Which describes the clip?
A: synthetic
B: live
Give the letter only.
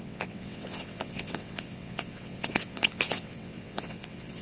A